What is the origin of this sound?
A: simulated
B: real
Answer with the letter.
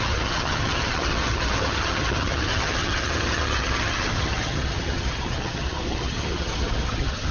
A